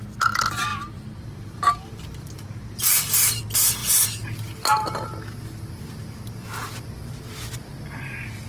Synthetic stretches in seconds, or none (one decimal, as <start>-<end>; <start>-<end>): 0.7-3.4